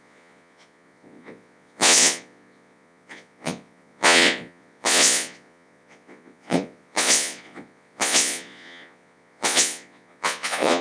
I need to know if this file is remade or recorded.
remade